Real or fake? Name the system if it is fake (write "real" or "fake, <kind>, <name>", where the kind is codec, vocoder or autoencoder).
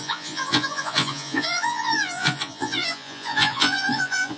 fake, vocoder, Vocos